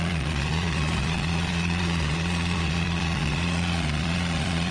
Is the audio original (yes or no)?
no